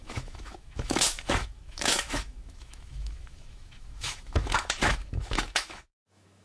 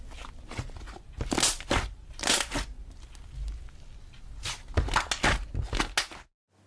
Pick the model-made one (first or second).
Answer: first